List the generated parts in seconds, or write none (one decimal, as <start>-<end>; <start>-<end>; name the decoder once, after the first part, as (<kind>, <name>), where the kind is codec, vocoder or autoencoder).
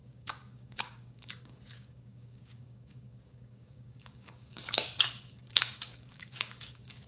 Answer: 0.0-7.1 (codec, DAC)